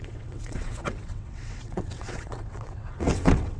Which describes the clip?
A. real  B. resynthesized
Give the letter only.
B